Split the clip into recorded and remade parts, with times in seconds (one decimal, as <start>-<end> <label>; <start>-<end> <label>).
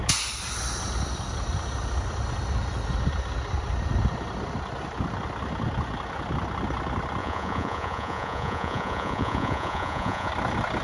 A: 0.0-7.2 recorded; 7.2-10.3 remade; 10.3-10.8 recorded